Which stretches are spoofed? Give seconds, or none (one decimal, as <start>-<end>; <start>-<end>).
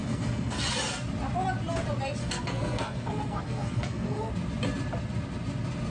0.0-0.6; 2.2-4.3